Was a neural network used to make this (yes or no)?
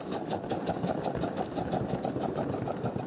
no